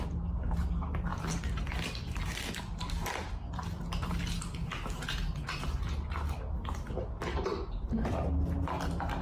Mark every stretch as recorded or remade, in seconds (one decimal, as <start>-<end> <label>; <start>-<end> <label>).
0.0-1.1 recorded; 1.1-3.5 remade; 3.5-7.3 recorded; 7.3-8.4 remade; 8.4-9.2 recorded